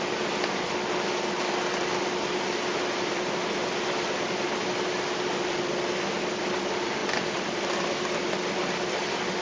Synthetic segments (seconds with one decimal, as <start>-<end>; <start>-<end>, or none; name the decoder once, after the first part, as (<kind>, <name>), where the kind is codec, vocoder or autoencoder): none